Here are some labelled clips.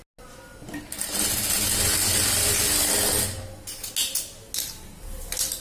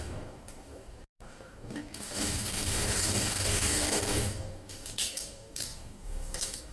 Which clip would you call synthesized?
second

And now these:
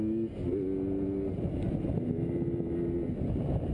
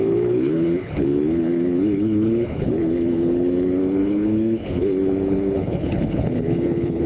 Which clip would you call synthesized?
second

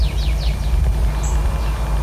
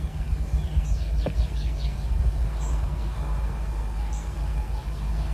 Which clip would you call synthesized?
second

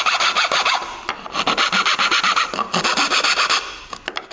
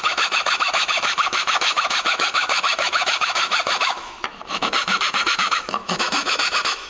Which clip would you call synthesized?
second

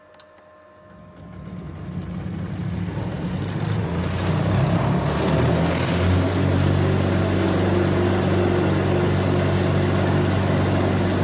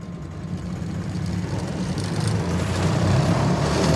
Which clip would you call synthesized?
second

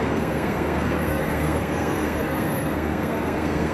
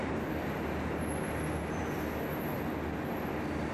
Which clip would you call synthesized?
first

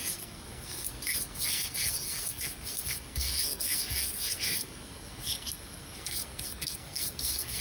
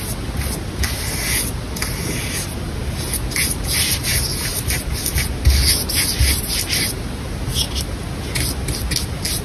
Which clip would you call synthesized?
first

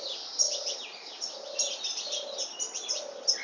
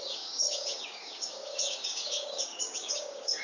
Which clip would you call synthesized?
second